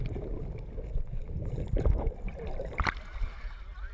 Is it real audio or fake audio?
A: real